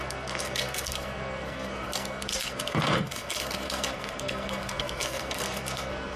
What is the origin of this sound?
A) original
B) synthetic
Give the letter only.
B